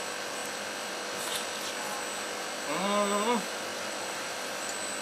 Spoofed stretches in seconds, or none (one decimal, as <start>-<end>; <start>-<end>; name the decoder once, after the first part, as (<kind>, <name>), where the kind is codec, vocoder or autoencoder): 3.7-5.0 (vocoder, BigVGAN v2)